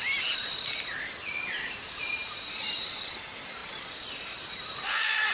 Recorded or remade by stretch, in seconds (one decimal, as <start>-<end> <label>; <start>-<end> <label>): 0.0-3.6 remade; 3.6-4.6 recorded; 4.6-5.3 remade